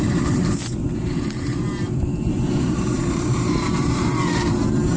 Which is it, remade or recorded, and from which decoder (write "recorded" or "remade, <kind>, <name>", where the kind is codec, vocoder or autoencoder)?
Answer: remade, vocoder, BigVGAN v2